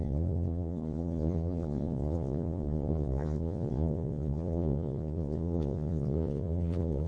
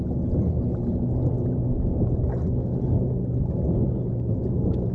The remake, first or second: first